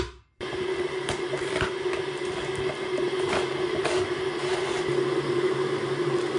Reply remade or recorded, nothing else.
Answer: recorded